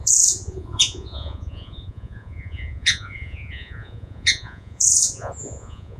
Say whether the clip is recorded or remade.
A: remade